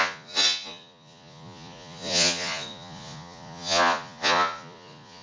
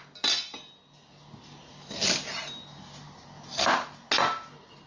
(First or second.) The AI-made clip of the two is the first